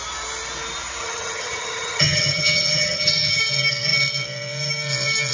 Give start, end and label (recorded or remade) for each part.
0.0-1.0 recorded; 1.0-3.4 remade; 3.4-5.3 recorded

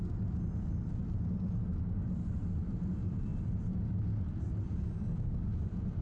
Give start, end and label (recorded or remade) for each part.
0.0-6.0 recorded

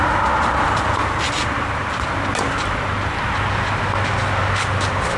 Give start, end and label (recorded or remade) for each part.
0.0-5.2 recorded